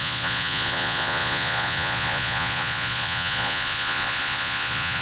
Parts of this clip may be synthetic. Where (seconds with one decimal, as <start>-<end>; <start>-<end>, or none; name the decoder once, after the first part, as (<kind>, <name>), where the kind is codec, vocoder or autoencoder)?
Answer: 0.0-5.0 (vocoder, Vocos)